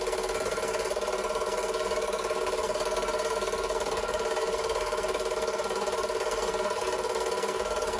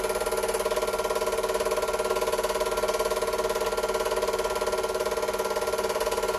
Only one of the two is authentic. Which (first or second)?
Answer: second